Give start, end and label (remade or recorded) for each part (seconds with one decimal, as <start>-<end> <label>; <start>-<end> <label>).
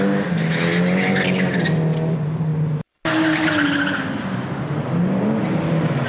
0.0-6.1 recorded